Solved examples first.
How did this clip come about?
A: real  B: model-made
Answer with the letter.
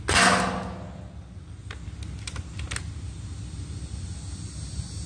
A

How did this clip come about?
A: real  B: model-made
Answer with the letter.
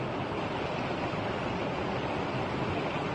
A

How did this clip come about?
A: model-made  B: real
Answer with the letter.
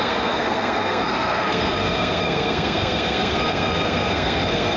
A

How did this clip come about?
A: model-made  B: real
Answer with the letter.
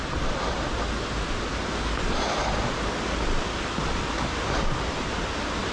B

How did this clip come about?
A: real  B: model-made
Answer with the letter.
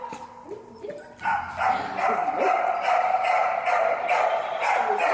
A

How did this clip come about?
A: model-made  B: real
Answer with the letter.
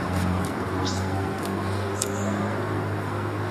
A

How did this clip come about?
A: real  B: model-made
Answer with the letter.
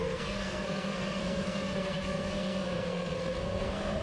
B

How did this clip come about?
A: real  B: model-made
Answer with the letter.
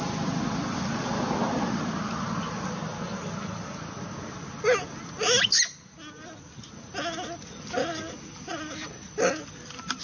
A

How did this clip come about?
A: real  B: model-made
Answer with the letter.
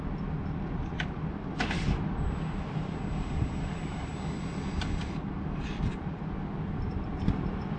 A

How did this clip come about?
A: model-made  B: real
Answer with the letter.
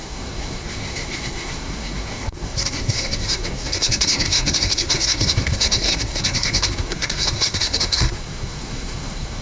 A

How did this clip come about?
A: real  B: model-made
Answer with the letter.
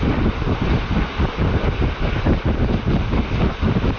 A